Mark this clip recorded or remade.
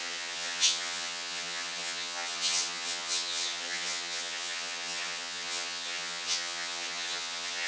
remade